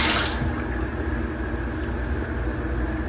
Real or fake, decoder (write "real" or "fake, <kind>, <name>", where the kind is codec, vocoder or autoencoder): real